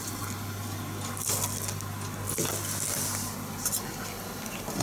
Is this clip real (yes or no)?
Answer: yes